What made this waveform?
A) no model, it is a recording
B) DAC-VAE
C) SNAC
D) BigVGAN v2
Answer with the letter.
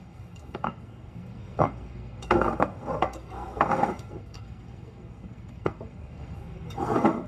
C